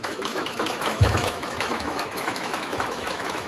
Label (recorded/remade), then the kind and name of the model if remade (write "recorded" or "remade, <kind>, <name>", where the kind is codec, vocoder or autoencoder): remade, autoencoder, DAC-VAE